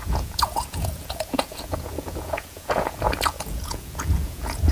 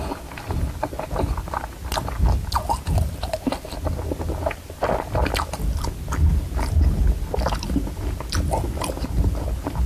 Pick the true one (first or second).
second